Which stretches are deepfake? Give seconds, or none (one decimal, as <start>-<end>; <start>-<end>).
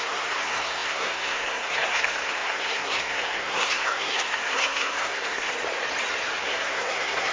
0.0-5.5; 6.4-7.3